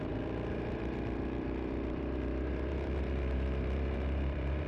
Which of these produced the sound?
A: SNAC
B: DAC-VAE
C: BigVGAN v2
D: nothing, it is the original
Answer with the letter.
C